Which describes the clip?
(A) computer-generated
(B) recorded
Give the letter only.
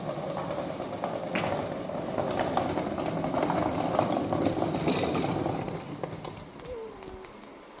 B